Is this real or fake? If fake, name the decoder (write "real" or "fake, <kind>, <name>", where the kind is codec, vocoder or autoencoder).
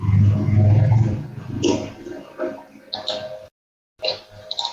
real